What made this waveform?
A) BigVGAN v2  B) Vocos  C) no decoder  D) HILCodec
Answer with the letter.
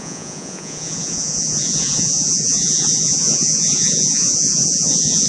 B